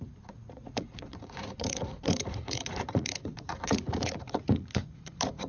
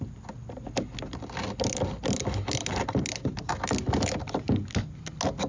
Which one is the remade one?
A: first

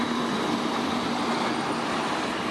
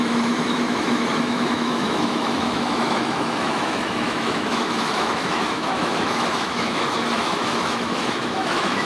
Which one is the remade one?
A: second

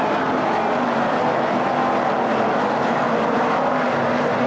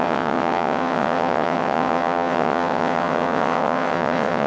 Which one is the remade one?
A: second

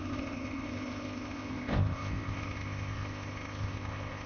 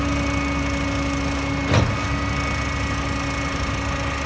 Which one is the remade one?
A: first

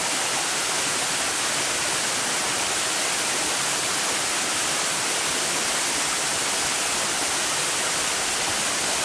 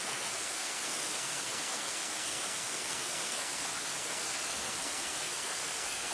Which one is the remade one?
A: second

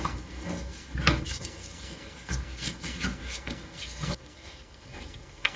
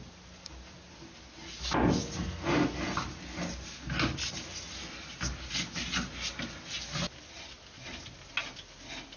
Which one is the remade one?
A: first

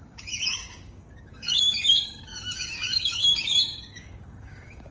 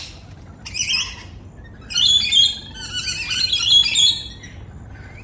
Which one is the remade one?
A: first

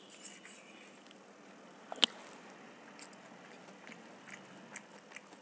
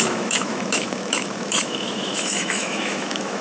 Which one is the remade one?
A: second